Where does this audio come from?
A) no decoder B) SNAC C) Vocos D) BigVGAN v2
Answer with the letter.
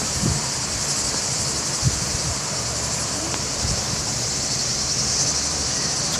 D